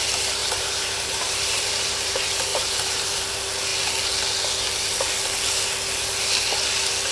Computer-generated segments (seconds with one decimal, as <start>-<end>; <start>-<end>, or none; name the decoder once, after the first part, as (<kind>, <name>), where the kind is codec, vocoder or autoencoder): 0.4-2.1 (vocoder, BigVGAN v2); 2.5-3.2

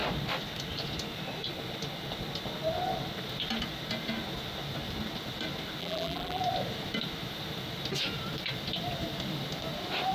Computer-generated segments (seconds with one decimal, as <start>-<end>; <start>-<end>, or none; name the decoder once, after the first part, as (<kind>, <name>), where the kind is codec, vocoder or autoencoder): 5.8-6.4 (vocoder, BigVGAN v2)